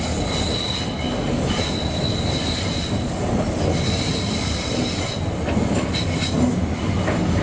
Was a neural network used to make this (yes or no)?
no